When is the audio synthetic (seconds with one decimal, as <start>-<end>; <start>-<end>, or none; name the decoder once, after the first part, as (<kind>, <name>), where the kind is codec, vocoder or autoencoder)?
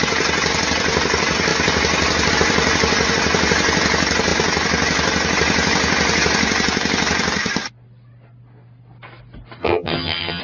9.6-10.4 (vocoder, HiFi-GAN)